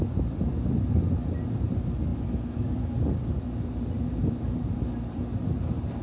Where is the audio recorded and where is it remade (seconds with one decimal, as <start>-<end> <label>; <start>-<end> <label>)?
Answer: 0.0-6.0 recorded